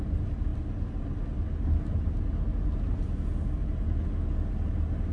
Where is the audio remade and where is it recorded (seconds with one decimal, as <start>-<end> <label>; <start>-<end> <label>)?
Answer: 0.0-5.1 recorded